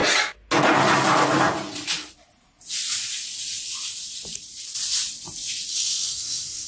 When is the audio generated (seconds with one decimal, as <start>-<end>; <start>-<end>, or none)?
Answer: 5.7-6.7